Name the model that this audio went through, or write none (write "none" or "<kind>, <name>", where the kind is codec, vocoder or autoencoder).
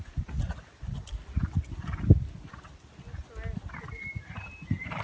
none